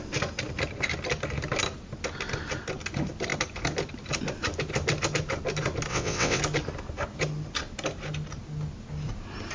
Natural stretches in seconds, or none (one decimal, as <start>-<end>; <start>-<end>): 0.0-5.9; 6.4-9.5